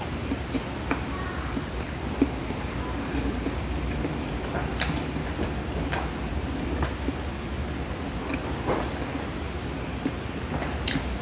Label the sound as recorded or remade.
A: recorded